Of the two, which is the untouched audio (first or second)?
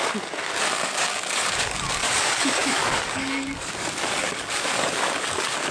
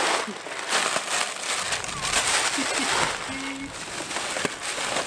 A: second